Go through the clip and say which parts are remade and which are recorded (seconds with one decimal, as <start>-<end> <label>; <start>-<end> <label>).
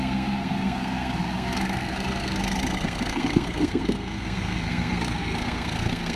0.0-6.2 remade